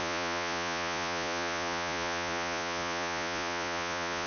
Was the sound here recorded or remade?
remade